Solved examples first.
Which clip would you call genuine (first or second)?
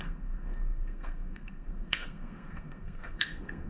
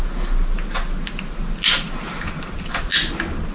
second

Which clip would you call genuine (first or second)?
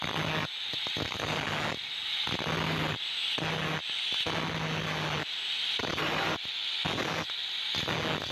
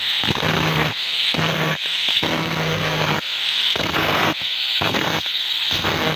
first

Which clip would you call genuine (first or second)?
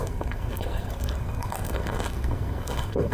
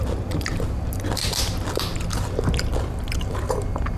second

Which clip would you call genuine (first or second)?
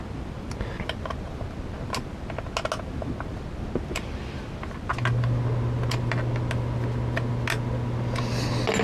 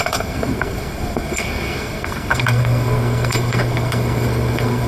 first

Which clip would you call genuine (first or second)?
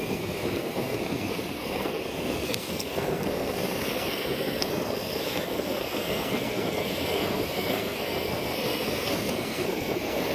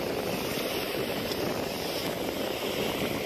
second